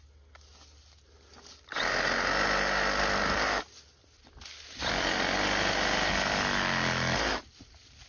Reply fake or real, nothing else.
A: real